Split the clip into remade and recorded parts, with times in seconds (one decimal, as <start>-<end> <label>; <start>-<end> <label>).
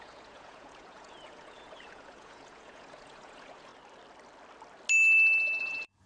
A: 0.0-3.7 remade; 3.7-5.6 recorded; 5.6-6.1 remade